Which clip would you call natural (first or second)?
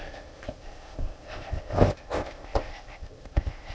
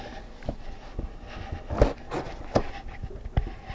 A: second